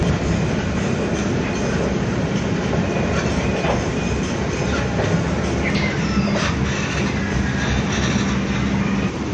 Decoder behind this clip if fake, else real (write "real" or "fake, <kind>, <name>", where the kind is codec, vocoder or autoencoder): real